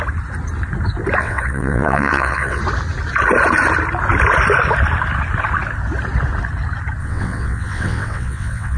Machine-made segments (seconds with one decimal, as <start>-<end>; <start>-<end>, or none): 1.2-2.6; 7.0-8.8

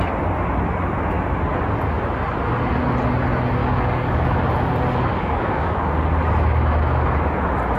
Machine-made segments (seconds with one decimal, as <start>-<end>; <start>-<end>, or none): 3.6-4.3; 5.1-5.9

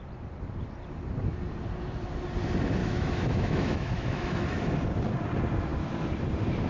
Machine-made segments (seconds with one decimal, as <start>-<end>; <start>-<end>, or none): 2.8-4.7

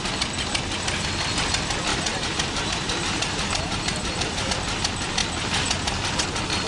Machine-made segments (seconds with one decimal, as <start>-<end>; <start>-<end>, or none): 1.9-4.5

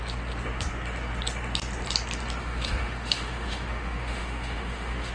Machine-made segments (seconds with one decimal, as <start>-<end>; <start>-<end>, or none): 2.4-5.1